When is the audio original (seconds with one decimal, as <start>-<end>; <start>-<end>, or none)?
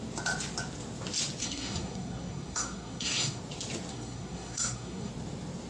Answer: 0.0-1.4; 3.4-3.9; 5.1-5.7